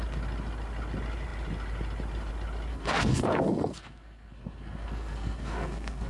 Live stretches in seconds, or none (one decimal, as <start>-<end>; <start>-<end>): 0.0-2.7